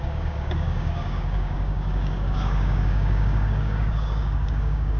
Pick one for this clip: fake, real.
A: fake